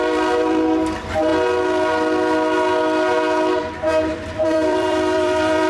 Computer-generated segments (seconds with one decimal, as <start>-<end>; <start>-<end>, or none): 0.0-1.3; 3.6-5.7